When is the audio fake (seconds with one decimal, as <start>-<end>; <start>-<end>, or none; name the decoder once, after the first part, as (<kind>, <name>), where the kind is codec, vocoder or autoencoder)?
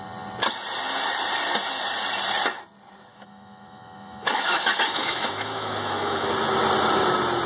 3.1-6.3 (autoencoder, DAC-VAE)